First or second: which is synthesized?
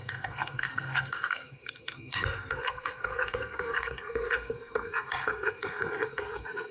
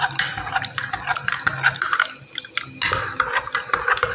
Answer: first